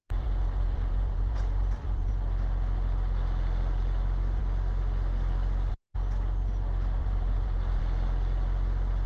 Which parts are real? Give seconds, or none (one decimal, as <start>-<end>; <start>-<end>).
2.1-7.0; 7.8-9.1